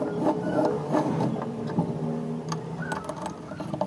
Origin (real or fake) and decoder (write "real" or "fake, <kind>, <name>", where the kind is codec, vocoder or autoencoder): real